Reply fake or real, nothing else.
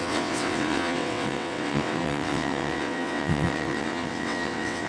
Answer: fake